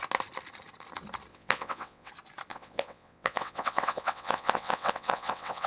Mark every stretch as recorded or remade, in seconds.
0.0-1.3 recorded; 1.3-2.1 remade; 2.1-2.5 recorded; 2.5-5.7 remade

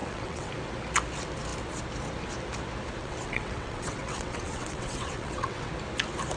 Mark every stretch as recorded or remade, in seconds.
0.0-0.5 remade; 0.5-3.0 recorded; 3.0-5.7 remade; 5.7-6.4 recorded

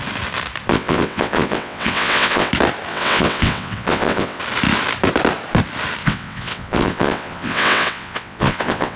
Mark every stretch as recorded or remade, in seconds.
0.0-0.7 recorded; 0.7-2.5 remade; 2.5-2.9 recorded; 2.9-4.4 remade; 4.4-6.0 recorded; 6.0-9.0 remade

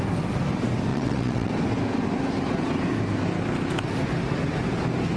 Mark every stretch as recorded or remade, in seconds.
0.0-0.9 recorded; 0.9-1.5 remade; 1.5-5.2 recorded

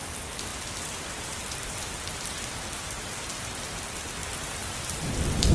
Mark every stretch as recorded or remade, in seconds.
0.0-5.5 recorded

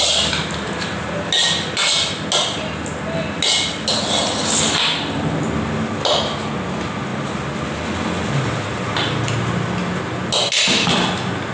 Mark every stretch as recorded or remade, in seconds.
0.0-11.5 recorded